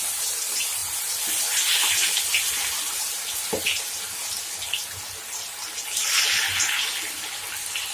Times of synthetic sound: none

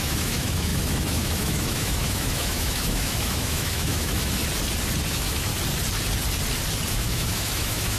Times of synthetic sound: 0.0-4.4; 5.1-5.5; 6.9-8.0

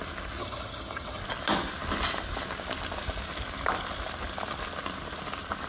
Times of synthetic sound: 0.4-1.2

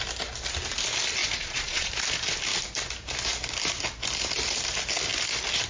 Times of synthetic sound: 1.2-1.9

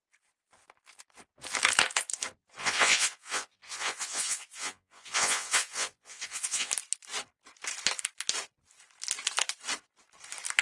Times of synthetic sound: 2.6-6.7

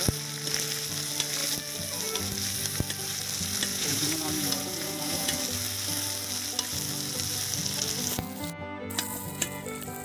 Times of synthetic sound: 3.7-5.4; 9.1-9.6

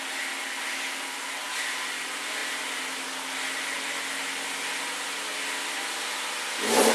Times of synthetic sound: none